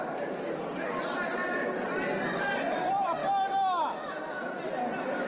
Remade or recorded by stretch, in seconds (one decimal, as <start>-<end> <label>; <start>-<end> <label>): 0.0-5.3 recorded